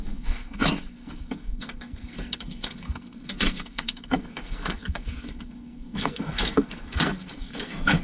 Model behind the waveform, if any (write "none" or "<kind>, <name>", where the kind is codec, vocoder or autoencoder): codec, SNAC